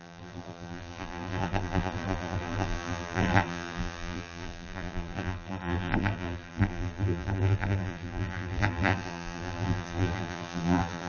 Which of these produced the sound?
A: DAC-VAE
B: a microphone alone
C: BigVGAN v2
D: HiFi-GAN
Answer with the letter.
C